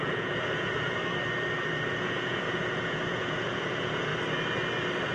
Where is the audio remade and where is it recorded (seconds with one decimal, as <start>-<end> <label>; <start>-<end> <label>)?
0.0-1.0 remade; 1.0-2.0 recorded; 2.0-4.1 remade; 4.1-5.1 recorded